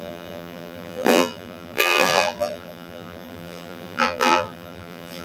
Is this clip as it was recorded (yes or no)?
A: no